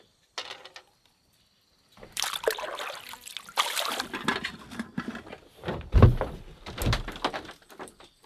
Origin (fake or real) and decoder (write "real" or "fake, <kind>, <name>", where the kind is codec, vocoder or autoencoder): real